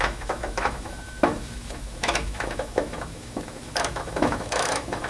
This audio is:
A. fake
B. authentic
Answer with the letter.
A